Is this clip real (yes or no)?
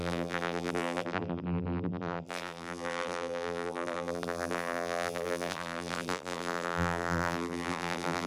no